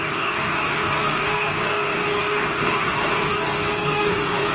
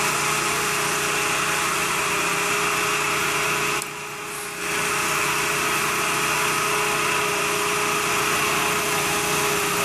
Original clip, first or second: second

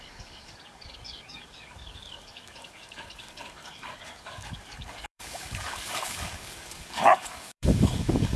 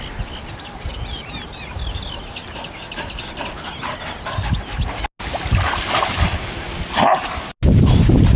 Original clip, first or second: second